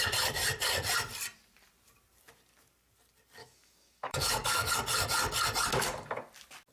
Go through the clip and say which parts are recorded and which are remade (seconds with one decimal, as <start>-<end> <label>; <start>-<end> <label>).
0.0-3.4 recorded; 3.4-4.7 remade; 4.7-5.7 recorded; 5.7-6.3 remade; 6.3-6.7 recorded